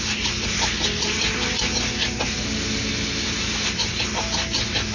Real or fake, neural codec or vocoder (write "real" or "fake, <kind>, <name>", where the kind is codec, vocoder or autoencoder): real